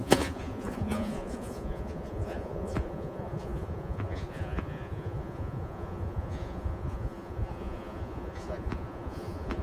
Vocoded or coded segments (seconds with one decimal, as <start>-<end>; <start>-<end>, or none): 0.0-9.6